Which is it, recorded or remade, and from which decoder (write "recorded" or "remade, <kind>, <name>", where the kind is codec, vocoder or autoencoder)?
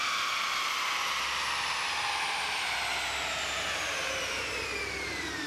recorded